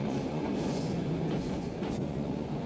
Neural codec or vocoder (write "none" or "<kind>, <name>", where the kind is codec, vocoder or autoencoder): vocoder, Vocos